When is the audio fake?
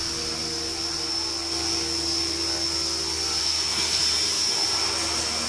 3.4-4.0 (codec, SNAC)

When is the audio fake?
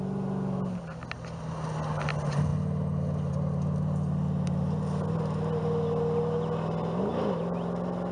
none